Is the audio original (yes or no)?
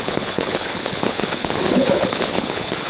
no